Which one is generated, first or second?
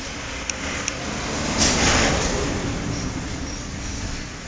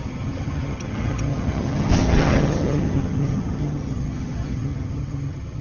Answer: second